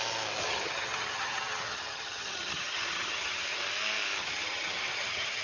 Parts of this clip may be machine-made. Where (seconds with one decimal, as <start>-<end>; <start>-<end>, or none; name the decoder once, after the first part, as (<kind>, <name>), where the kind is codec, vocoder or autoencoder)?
0.4-3.6 (vocoder, HiFi-GAN); 4.2-5.4